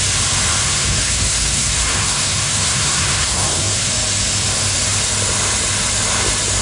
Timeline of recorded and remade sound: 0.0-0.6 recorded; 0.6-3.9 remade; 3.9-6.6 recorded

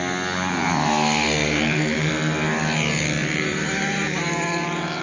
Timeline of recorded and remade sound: 0.0-1.4 recorded; 1.4-2.1 remade; 2.1-3.2 recorded; 3.2-5.0 remade

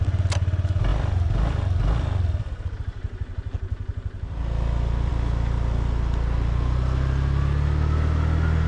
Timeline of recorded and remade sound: 0.0-8.7 recorded

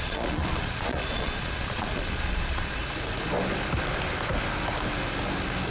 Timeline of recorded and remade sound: 0.0-2.8 remade; 2.8-5.7 recorded

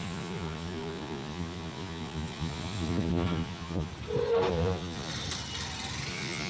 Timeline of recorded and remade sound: 0.0-3.9 remade; 3.9-4.5 recorded; 4.5-5.1 remade; 5.1-6.1 recorded; 6.1-6.5 remade